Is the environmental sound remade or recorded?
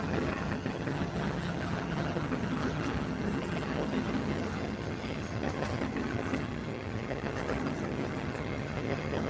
remade